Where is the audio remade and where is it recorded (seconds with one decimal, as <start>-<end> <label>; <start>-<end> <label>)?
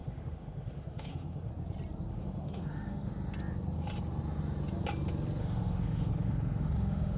0.0-1.5 remade; 1.5-2.1 recorded; 2.1-3.1 remade; 3.1-5.4 recorded; 5.4-7.2 remade